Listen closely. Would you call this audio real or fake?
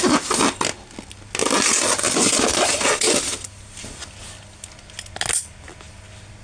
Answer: real